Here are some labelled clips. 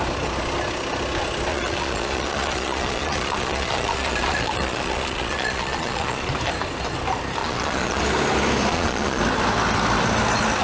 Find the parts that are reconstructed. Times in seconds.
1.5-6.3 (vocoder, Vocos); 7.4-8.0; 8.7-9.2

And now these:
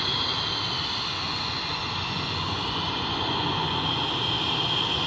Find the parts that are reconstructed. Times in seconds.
1.1-4.0 (vocoder, Vocos)

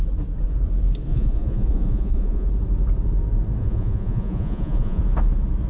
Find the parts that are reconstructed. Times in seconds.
1.1-2.5 (vocoder, Vocos); 3.6-5.0

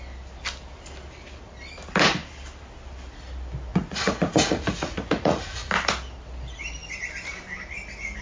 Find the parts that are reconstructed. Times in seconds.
3.7-5.7 (vocoder, Vocos)

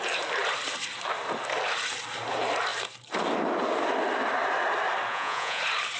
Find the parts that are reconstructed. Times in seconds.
5.1-5.6 (vocoder, Vocos)

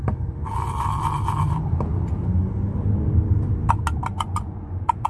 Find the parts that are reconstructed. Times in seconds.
4.1-5.1 (vocoder, Vocos)